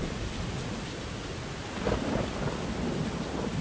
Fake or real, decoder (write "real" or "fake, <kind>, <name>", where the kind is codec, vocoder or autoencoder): fake, vocoder, BigVGAN v2